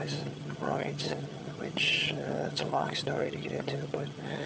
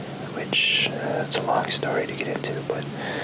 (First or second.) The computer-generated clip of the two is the first